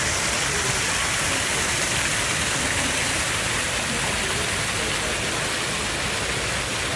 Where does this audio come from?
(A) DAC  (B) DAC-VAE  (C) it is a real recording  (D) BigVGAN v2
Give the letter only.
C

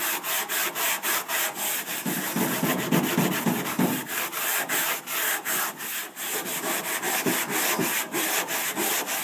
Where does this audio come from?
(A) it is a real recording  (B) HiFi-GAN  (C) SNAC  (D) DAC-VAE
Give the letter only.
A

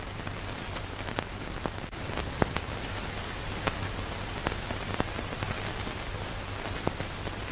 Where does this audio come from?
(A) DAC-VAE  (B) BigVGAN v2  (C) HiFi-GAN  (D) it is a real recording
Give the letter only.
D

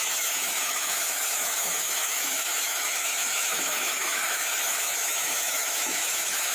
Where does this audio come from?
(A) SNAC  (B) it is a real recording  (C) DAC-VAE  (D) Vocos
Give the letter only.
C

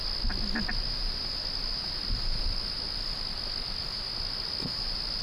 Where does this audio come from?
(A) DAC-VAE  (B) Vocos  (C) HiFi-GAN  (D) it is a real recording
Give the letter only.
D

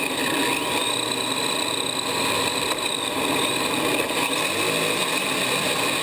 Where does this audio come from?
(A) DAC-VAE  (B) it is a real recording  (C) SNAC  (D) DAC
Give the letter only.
B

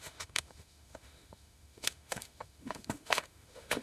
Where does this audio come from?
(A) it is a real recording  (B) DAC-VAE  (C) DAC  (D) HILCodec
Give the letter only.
B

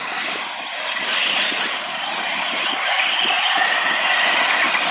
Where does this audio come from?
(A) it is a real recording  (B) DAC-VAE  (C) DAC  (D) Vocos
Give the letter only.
A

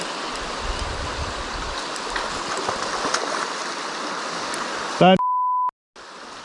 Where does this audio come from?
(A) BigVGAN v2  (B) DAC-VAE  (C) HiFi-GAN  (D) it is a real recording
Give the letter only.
D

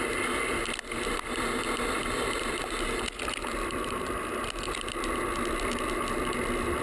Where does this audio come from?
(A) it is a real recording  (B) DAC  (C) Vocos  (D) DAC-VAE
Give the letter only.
A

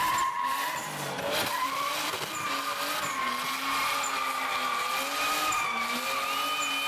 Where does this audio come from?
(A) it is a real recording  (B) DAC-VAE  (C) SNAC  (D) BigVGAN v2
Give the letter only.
A